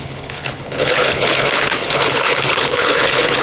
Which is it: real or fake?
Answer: fake